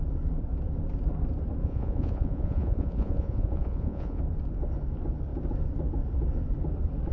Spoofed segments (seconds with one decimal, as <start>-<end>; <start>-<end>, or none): 1.6-4.2